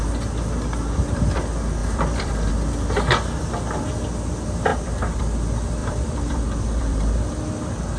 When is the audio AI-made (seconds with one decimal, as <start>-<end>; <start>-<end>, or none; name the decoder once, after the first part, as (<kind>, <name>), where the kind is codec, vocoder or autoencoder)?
1.8-2.5 (vocoder, BigVGAN v2); 4.7-5.2; 5.8-7.5